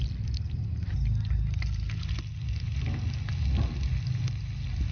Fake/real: real